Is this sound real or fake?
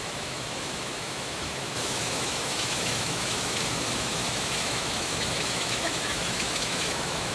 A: fake